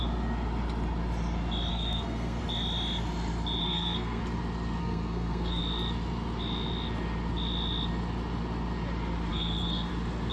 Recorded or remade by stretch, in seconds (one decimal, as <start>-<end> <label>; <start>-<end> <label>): 0.0-1.7 recorded; 1.7-2.4 remade; 2.4-3.6 recorded; 3.6-4.2 remade; 4.2-4.8 recorded; 4.8-5.6 remade; 5.6-9.3 recorded; 9.3-9.9 remade; 9.9-10.3 recorded